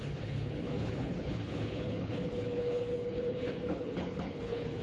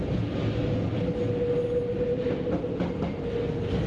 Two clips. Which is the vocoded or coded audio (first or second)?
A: first